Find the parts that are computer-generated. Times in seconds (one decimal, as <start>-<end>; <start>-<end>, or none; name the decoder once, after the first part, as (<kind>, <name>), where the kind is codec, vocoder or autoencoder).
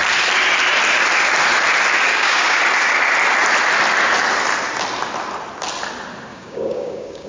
2.1-2.6 (codec, DAC); 6.3-7.3